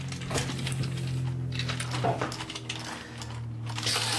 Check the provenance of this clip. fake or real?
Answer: real